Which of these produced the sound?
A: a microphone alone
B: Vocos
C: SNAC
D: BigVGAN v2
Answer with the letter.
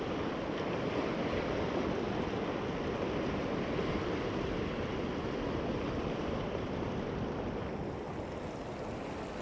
A